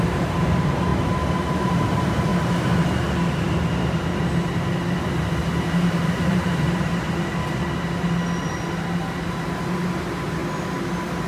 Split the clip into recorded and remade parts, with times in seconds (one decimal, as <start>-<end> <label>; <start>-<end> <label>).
0.0-0.9 remade; 0.9-1.4 recorded; 1.4-2.3 remade; 2.3-5.6 recorded; 5.6-6.9 remade; 6.9-8.7 recorded; 8.7-10.4 remade; 10.4-10.9 recorded; 10.9-11.3 remade